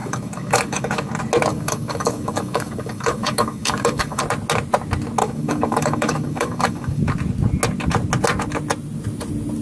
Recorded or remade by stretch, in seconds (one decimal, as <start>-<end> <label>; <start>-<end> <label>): 0.0-1.1 remade; 1.1-1.5 recorded; 1.5-4.2 remade; 4.2-5.2 recorded; 5.2-7.0 remade; 7.0-9.6 recorded